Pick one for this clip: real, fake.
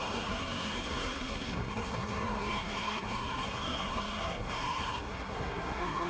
fake